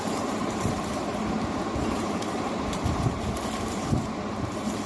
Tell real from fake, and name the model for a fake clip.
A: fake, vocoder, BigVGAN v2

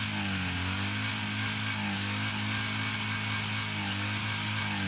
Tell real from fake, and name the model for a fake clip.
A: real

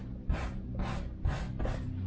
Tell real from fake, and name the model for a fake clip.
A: real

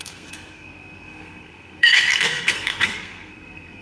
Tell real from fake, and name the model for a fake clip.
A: fake, codec, SNAC